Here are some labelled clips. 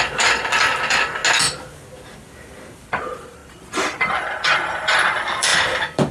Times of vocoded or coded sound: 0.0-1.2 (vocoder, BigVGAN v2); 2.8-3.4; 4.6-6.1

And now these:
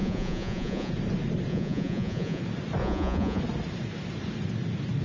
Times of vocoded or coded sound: 0.0-0.9 (vocoder, Vocos); 1.5-2.4; 2.8-3.4

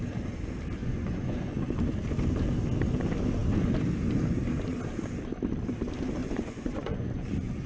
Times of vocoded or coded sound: 0.8-1.8 (vocoder, Vocos); 6.2-7.7

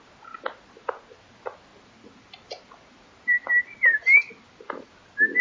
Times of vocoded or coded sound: 1.7-4.9 (vocoder, BigVGAN v2)